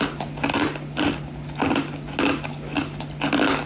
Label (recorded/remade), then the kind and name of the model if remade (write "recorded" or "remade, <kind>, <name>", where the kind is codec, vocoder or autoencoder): recorded